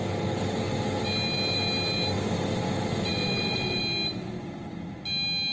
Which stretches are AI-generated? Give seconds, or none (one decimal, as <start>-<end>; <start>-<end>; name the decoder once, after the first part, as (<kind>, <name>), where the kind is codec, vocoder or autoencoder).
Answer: 3.1-3.8 (vocoder, Vocos)